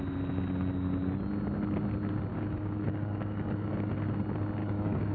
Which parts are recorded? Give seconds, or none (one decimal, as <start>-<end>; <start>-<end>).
0.0-2.3; 3.9-4.6